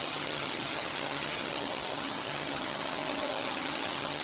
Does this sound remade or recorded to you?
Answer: remade